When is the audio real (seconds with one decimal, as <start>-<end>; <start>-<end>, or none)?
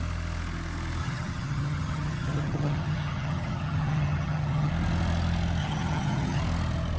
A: 0.0-1.0; 4.7-5.6; 6.4-7.0